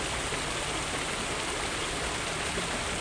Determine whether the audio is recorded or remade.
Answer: recorded